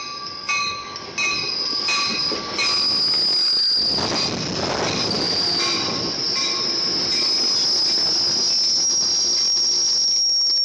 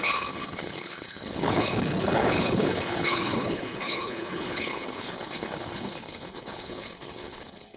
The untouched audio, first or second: first